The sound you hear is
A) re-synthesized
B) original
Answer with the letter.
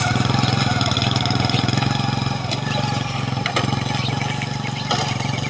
B